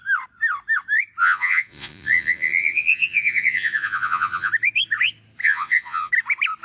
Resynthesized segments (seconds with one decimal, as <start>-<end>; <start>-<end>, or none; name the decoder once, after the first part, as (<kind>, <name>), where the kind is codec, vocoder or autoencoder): 1.2-4.5 (vocoder, Vocos); 5.4-6.1